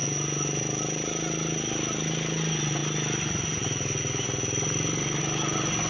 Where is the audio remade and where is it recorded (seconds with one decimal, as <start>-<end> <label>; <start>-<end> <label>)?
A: 0.0-5.9 recorded